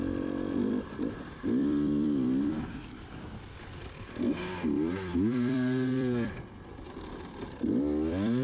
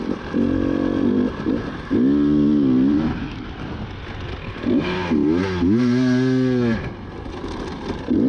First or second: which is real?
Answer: second